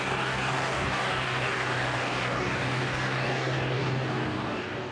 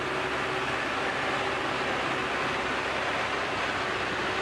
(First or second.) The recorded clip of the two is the second